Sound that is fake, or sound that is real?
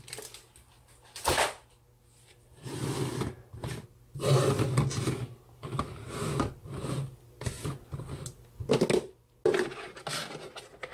real